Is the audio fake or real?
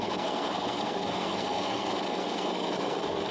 fake